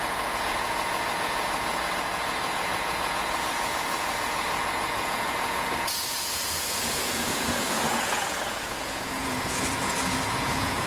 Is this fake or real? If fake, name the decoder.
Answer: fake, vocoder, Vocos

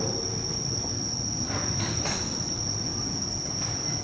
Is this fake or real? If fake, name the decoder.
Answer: real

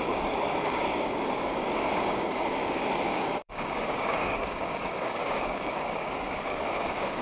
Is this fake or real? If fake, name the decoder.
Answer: fake, codec, DAC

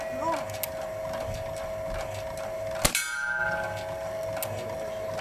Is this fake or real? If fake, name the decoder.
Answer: real